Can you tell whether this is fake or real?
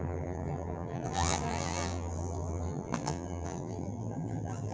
fake